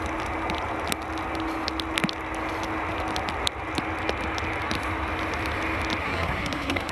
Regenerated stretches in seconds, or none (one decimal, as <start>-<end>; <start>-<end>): 6.0-6.9